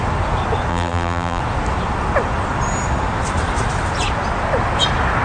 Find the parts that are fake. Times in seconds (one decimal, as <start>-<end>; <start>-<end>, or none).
0.7-1.4